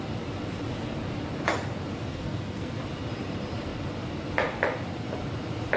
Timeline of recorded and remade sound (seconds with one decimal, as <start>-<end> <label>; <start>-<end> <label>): 0.0-2.1 recorded; 2.1-2.8 remade; 2.8-5.8 recorded